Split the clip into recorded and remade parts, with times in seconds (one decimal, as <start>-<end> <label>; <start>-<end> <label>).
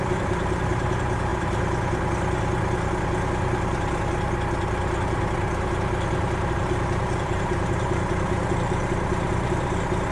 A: 0.0-1.3 remade; 1.3-6.5 recorded; 6.5-10.1 remade